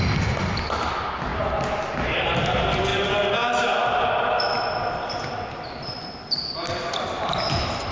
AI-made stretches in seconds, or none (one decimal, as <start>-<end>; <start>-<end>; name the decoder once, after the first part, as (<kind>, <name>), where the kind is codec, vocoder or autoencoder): none